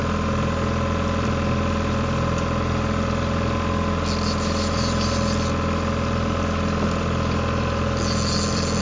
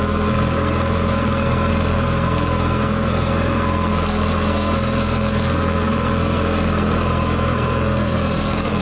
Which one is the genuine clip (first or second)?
first